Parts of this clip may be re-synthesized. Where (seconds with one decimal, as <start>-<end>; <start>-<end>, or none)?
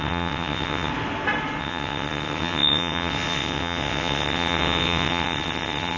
0.0-0.9; 1.6-6.0